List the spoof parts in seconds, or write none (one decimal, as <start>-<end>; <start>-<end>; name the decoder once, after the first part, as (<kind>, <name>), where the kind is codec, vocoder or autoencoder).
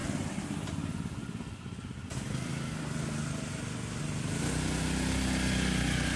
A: none